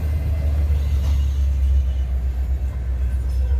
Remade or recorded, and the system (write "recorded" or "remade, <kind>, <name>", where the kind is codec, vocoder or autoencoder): recorded